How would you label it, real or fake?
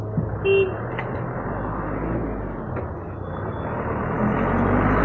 real